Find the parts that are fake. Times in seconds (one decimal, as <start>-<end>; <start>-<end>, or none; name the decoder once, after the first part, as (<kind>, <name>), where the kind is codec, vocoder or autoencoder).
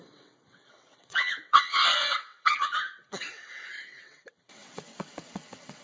0.0-5.8 (vocoder, WaveNeXt)